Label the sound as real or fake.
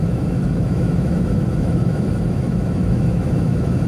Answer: fake